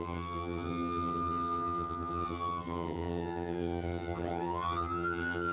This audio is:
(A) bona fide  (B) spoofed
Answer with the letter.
B